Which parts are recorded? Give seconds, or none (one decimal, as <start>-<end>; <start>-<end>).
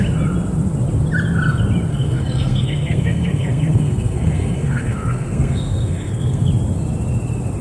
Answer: 0.0-1.9; 6.5-7.6